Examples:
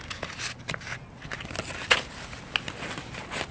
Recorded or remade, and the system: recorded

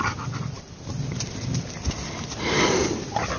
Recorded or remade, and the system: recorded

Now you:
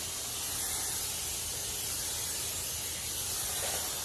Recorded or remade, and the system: recorded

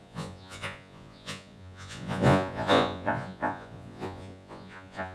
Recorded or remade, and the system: remade, vocoder, Vocos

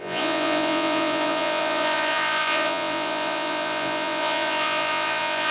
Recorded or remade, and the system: remade, vocoder, Vocos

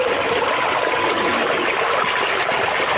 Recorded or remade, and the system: recorded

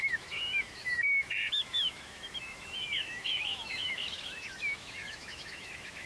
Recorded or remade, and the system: remade, autoencoder, DAC-VAE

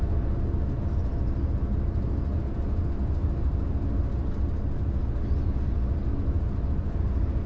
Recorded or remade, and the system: recorded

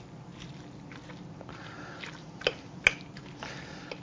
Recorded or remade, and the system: recorded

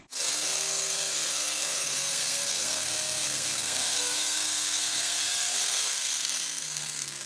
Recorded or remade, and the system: remade, codec, SNAC